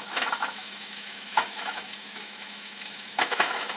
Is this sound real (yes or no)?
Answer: no